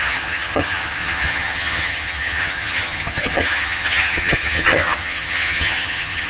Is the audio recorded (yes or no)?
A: no